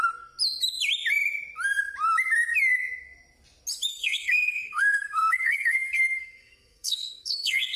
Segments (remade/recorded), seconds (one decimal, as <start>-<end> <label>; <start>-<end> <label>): 0.0-3.9 recorded; 3.9-7.8 remade